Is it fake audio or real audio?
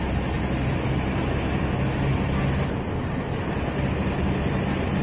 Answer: real